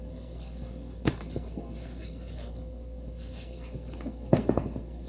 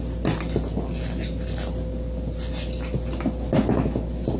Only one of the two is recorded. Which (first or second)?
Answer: second